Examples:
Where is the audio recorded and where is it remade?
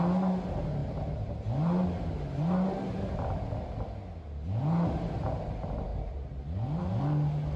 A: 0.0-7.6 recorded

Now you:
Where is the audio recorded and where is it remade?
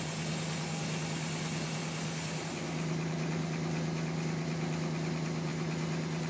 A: 0.0-6.3 recorded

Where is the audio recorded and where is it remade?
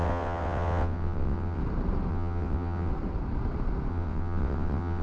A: 0.0-1.6 remade; 1.6-2.1 recorded; 2.1-2.9 remade; 2.9-3.9 recorded; 3.9-5.0 remade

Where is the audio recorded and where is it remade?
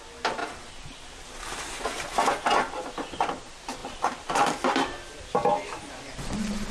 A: 0.0-3.8 recorded; 3.8-5.2 remade; 5.2-6.7 recorded